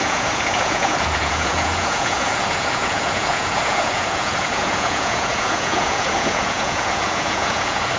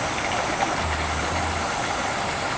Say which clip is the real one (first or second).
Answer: second